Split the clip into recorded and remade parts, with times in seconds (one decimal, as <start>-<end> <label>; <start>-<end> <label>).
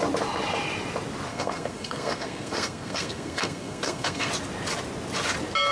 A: 0.0-1.3 recorded; 1.3-4.3 remade; 4.3-5.7 recorded